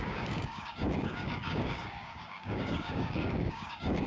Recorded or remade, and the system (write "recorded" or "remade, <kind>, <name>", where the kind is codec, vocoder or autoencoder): remade, codec, DAC